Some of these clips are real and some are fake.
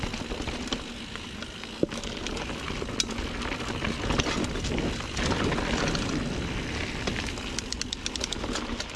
real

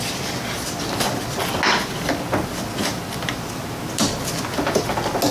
real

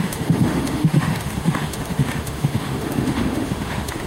fake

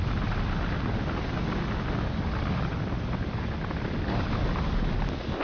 real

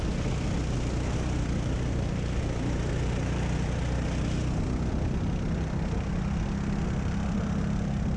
real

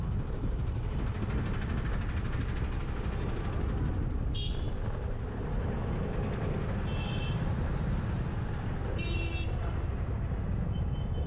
real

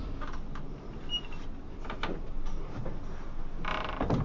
real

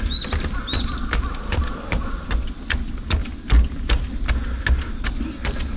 real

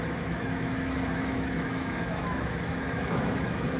fake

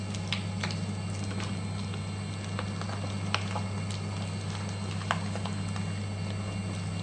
real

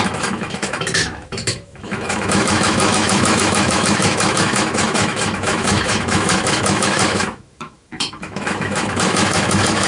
fake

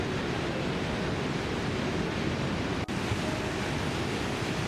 real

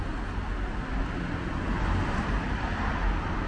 real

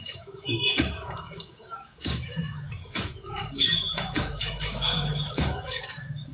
fake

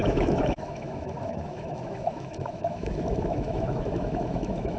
fake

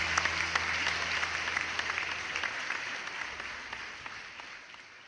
real